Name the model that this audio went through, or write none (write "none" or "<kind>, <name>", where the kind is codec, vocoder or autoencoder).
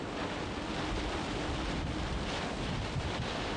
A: none